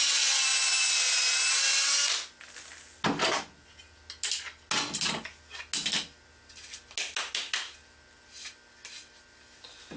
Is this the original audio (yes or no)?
yes